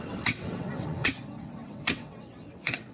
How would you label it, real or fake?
fake